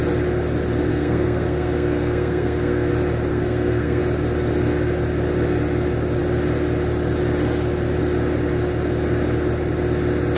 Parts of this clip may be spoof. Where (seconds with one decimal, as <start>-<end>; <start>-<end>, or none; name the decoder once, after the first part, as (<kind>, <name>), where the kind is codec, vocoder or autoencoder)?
0.9-2.9 (codec, SNAC); 3.3-4.0